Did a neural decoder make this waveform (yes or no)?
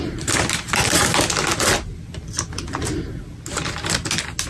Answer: no